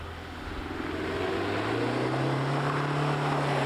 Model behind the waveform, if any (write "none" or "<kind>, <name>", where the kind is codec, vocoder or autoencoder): none